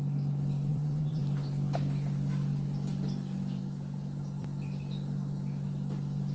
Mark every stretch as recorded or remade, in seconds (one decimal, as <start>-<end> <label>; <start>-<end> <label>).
0.0-0.7 recorded; 0.7-1.2 remade; 1.2-6.3 recorded